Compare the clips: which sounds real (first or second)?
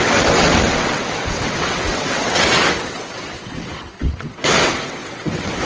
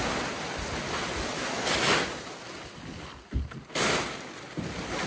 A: second